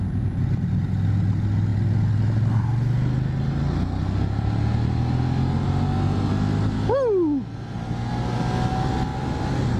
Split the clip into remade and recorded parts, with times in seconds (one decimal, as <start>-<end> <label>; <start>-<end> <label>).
0.0-9.8 recorded